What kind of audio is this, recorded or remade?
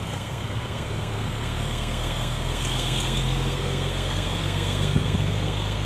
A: remade